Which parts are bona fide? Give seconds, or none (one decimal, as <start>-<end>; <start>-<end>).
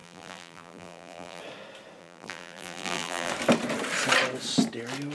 1.4-2.0; 3.3-5.1